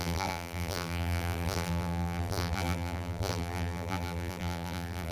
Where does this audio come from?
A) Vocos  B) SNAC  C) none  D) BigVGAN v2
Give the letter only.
D